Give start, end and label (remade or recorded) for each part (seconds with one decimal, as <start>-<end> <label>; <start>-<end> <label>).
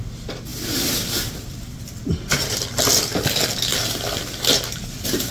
0.0-0.5 recorded; 0.5-2.5 remade; 2.5-5.3 recorded